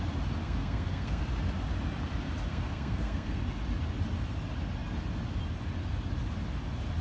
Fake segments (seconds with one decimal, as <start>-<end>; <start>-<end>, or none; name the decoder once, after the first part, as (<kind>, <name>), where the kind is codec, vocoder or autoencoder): 0.4-1.2 (codec, SNAC); 2.5-3.4